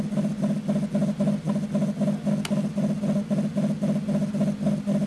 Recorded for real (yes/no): yes